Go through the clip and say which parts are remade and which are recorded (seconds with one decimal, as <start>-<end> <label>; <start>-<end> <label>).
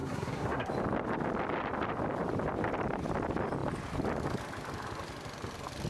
0.0-0.7 remade; 0.7-5.9 recorded